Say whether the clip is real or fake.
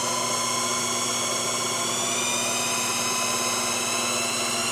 real